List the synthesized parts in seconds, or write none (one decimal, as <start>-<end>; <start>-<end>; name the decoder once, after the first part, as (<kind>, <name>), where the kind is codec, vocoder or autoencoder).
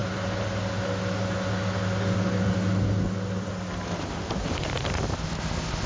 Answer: none